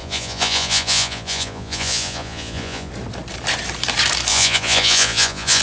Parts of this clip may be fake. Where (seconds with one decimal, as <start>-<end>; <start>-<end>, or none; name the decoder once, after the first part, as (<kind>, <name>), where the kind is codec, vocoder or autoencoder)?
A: 0.0-2.9 (vocoder, Vocos); 4.3-5.6